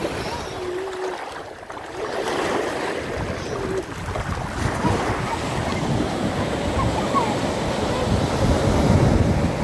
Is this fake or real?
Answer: real